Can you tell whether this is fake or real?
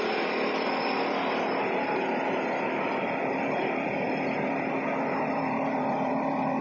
fake